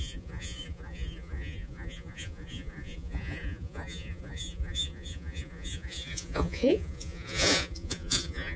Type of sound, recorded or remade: remade